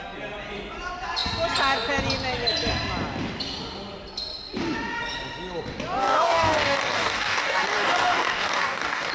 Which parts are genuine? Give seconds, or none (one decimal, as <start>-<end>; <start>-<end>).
0.0-6.0